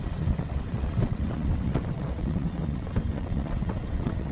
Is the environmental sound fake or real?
fake